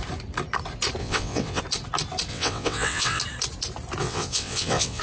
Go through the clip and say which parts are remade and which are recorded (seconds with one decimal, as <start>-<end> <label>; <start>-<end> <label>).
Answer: 0.0-1.0 recorded; 1.0-1.6 remade; 1.6-2.3 recorded; 2.3-3.2 remade; 3.2-4.0 recorded; 4.0-5.0 remade